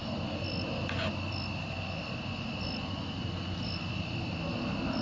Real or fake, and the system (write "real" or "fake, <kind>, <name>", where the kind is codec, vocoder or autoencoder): real